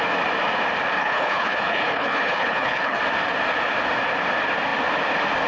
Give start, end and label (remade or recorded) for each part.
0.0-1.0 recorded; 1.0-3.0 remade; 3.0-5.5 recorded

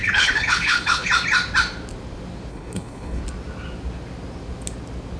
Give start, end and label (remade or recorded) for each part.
0.0-1.1 remade; 1.1-2.5 recorded; 2.5-3.2 remade; 3.2-5.2 recorded

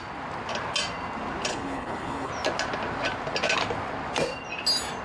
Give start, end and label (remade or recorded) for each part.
0.0-1.5 recorded; 1.5-2.3 remade; 2.3-5.0 recorded